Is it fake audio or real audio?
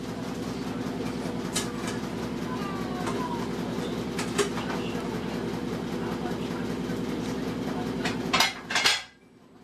real